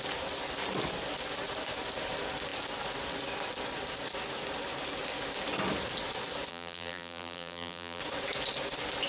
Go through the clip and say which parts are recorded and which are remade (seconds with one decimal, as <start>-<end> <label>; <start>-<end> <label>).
0.0-6.5 recorded; 6.5-8.0 remade; 8.0-9.1 recorded